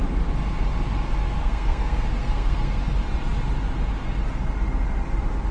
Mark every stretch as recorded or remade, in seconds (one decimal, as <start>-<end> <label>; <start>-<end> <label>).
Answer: 0.0-1.4 recorded; 1.4-2.8 remade; 2.8-5.5 recorded